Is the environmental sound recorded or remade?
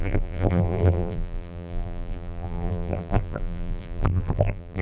remade